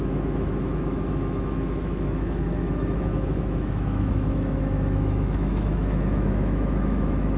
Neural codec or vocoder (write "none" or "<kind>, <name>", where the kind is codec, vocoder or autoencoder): autoencoder, DAC-VAE